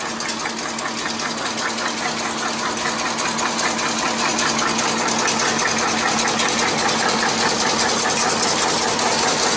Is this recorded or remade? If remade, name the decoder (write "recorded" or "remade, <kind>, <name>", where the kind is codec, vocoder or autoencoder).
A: recorded